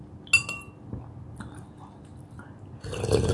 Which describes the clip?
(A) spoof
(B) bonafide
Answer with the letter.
B